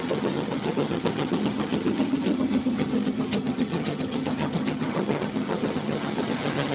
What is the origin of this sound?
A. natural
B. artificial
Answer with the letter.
B